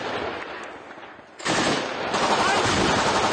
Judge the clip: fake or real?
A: real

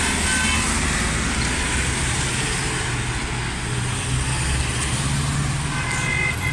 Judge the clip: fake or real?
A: real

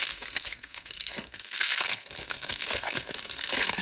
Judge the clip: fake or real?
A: fake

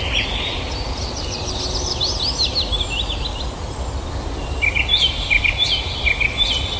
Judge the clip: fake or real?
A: real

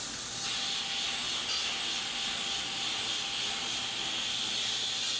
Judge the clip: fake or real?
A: real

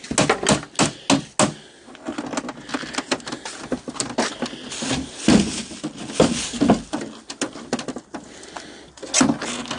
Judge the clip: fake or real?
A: real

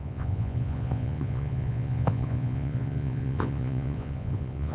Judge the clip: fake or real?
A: fake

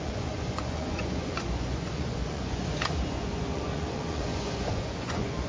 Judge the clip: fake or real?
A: fake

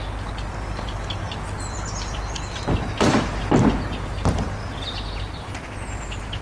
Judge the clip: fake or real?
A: real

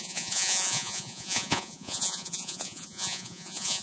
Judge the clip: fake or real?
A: fake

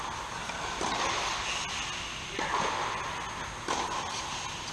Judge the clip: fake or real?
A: real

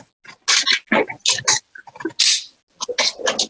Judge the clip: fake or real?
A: real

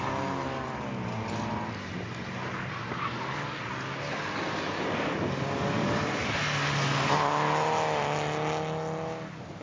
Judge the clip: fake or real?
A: real